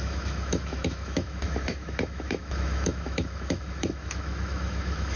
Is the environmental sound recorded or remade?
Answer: remade